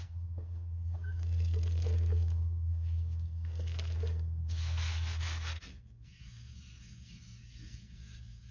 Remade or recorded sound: remade